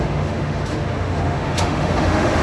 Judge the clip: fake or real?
fake